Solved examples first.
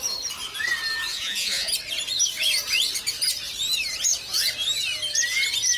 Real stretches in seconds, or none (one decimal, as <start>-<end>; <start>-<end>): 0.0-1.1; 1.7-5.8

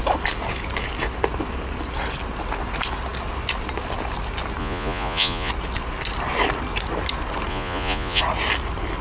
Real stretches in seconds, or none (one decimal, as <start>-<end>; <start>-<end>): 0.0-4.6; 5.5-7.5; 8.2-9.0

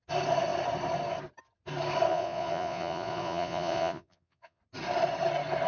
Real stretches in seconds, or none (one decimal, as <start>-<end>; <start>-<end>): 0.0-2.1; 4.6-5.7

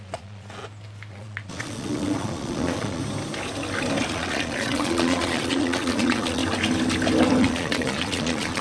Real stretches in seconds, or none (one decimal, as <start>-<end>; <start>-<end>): 0.6-1.1; 3.0-4.1; 6.4-7.4